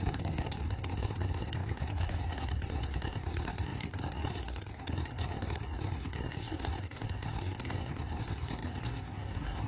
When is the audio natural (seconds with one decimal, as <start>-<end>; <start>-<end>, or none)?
none